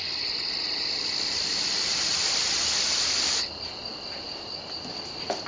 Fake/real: real